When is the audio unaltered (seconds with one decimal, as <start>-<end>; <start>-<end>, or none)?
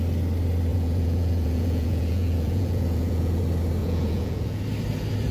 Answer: 0.0-0.7; 3.4-3.8; 4.6-5.3